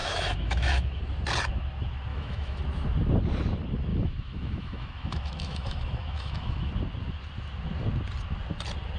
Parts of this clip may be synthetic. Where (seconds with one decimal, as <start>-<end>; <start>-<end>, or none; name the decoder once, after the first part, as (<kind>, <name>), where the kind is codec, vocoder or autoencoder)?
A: 0.0-1.0 (autoencoder, DAC-VAE); 2.1-2.6; 3.9-6.7